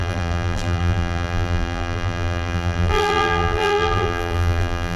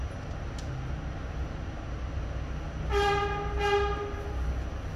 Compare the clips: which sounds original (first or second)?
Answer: second